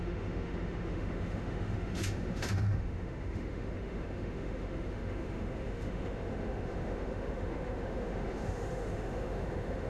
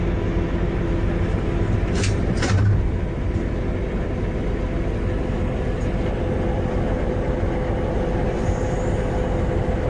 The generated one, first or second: first